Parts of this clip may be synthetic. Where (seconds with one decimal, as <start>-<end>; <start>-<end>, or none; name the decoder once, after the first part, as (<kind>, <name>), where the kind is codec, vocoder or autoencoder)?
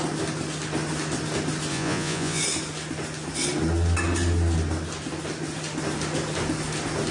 1.7-2.4 (vocoder, Vocos)